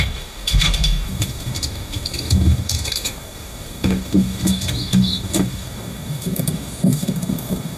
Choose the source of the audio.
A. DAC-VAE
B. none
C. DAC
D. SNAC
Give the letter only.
C